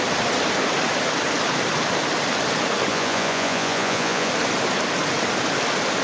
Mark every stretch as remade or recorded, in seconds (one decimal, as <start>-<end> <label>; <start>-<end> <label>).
0.0-2.9 recorded; 2.9-4.3 remade; 4.3-6.0 recorded